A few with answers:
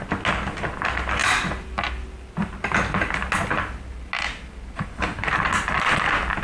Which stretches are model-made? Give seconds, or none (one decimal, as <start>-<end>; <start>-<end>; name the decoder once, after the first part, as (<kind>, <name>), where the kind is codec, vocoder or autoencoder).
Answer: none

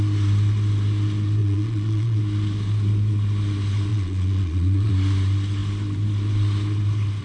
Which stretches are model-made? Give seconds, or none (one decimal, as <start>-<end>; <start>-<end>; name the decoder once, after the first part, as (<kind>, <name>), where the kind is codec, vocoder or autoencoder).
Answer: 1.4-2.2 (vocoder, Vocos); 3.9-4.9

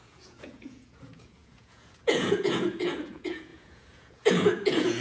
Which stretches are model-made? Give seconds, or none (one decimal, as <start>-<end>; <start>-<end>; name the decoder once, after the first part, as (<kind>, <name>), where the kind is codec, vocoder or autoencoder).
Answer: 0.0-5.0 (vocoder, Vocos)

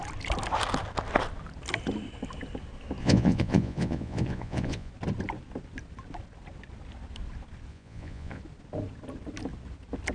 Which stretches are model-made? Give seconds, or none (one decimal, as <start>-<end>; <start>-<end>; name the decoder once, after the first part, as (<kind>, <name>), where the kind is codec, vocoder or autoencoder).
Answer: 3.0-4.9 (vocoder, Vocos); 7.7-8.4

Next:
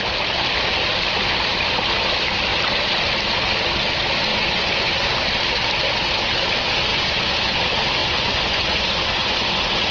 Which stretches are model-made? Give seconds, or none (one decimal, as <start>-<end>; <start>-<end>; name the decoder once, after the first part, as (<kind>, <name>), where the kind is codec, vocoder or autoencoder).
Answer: 4.3-4.9 (vocoder, Vocos); 6.9-7.6; 8.0-9.9

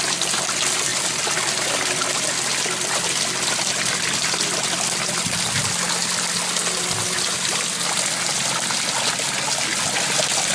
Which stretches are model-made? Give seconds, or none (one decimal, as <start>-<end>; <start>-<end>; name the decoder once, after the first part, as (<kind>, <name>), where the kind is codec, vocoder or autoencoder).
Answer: none